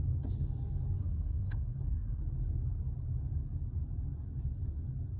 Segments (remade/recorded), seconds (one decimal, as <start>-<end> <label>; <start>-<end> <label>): 0.0-1.0 recorded; 1.0-2.2 remade; 2.2-5.2 recorded